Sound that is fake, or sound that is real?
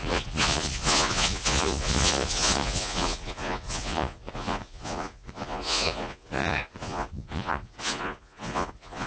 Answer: fake